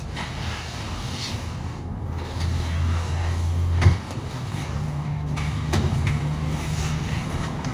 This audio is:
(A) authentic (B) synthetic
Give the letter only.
B